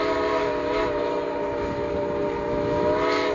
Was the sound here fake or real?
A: real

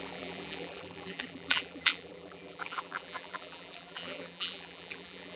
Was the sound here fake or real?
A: fake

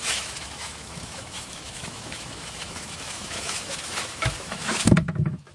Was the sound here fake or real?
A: fake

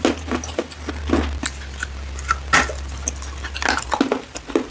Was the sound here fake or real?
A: real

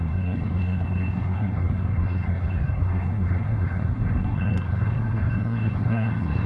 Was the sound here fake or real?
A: fake